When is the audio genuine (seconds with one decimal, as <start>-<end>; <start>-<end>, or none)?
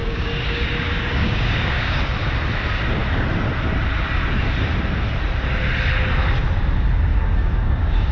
2.0-7.1